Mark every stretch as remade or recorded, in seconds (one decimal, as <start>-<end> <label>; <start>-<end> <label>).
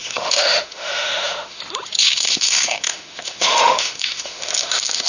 0.0-1.6 remade; 1.6-2.0 recorded; 2.0-5.1 remade